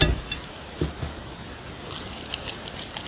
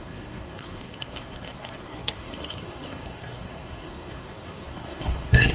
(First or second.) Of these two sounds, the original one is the first